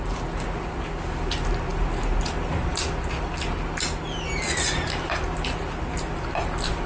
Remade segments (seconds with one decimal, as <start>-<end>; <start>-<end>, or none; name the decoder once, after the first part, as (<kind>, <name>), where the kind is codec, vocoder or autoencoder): none